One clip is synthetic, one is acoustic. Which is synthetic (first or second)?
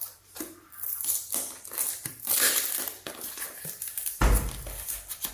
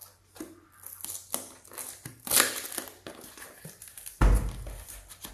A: first